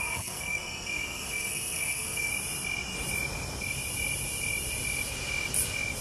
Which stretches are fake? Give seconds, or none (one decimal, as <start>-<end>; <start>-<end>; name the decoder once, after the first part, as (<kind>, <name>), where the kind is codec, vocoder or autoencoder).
0.0-2.3 (codec, SNAC)